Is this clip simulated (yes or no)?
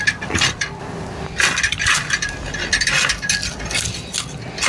no